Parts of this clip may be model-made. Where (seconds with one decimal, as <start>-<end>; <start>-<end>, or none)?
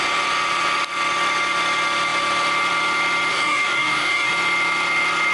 3.3-4.3